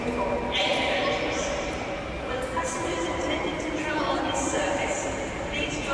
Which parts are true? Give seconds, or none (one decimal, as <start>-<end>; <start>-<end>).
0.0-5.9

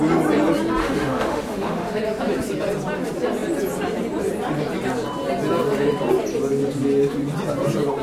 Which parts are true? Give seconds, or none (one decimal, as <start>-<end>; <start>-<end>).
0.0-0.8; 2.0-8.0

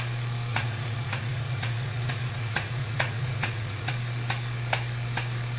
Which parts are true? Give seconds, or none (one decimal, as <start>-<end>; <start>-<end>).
0.0-0.5; 3.9-5.6

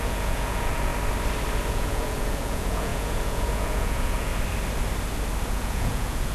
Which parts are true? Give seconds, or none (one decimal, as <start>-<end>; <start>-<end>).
0.9-1.7; 4.3-5.5

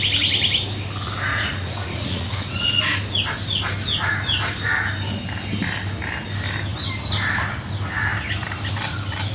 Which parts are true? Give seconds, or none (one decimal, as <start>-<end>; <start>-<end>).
0.0-1.3; 2.8-9.3